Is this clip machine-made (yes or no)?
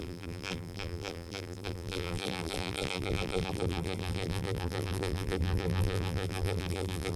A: yes